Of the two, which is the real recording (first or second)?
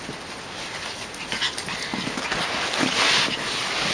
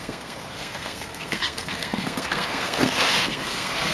first